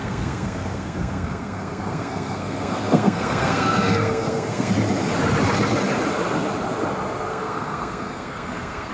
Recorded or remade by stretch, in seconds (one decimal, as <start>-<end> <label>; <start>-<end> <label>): 0.0-4.7 remade; 4.7-7.3 recorded; 7.3-8.9 remade